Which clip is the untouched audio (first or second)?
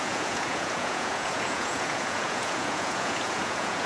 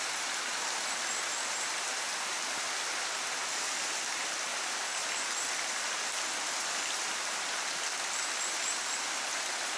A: second